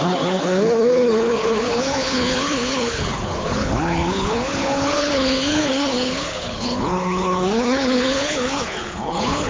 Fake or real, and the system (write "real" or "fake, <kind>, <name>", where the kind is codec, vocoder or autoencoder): fake, codec, HILCodec